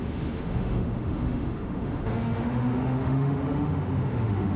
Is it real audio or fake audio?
fake